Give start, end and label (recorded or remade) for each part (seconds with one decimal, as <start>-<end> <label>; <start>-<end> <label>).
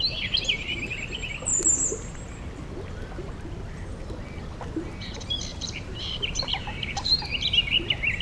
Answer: 0.0-5.5 recorded; 5.5-7.2 remade; 7.2-8.2 recorded